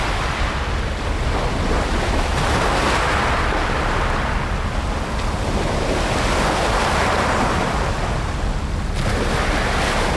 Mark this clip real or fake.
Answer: real